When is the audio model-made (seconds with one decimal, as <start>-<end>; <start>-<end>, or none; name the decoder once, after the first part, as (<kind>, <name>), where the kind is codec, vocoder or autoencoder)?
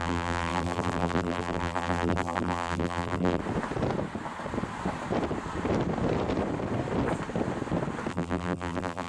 0.0-3.4 (vocoder, BigVGAN v2); 8.1-9.1